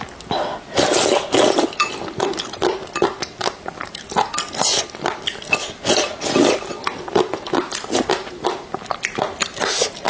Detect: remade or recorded recorded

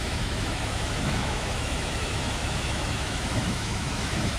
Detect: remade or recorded remade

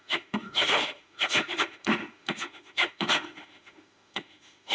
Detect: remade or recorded remade